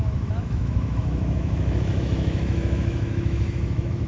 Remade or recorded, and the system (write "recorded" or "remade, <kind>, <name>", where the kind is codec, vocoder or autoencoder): remade, autoencoder, DAC-VAE